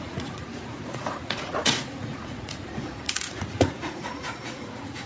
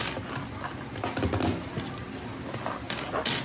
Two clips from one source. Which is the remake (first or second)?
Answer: first